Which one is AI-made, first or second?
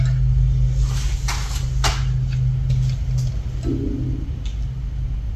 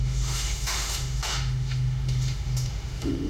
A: second